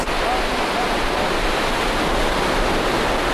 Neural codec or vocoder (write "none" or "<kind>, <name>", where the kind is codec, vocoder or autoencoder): none